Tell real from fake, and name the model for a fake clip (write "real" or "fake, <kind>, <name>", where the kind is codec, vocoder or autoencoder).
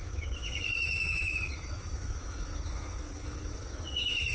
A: fake, autoencoder, DAC-VAE